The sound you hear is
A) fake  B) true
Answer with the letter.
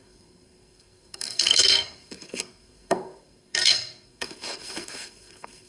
A